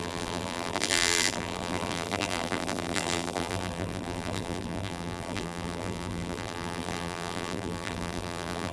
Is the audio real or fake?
fake